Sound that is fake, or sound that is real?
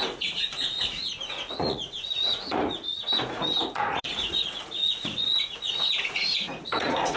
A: fake